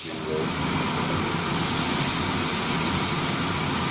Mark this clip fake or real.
real